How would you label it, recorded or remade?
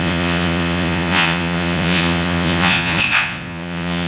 remade